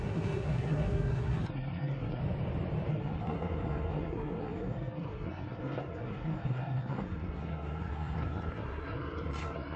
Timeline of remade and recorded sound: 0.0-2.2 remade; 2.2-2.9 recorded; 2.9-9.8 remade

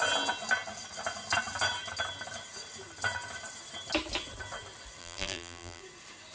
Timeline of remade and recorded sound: 0.0-5.0 recorded; 5.0-5.8 remade; 5.8-6.3 recorded

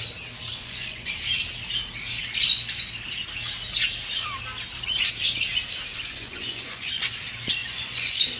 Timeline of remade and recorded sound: 0.0-0.5 recorded; 0.5-1.1 remade; 1.1-5.9 recorded; 5.9-7.1 remade; 7.1-7.6 recorded; 7.6-8.4 remade

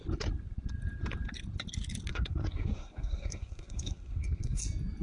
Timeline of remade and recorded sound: 0.0-2.1 recorded; 2.1-4.6 remade; 4.6-5.0 recorded

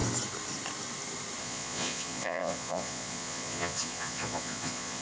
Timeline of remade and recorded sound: 0.0-1.4 recorded; 1.4-5.0 remade

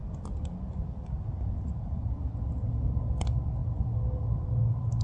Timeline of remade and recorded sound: 0.0-5.0 recorded

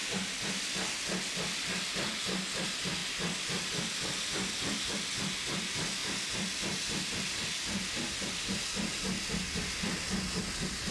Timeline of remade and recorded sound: 0.0-3.0 recorded; 3.0-3.7 remade; 3.7-10.9 recorded